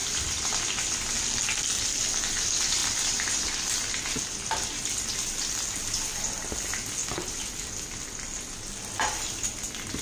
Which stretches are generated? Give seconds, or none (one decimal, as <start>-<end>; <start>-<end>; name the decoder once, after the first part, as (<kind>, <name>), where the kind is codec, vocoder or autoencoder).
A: none